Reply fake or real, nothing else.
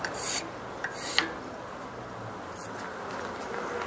real